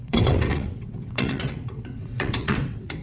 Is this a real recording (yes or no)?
no